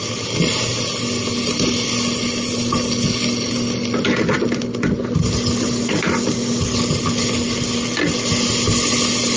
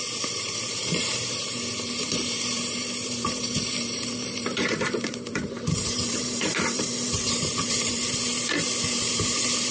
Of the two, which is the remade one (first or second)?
second